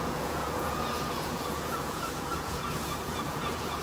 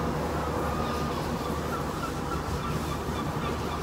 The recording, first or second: second